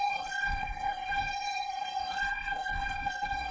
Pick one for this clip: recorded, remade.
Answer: remade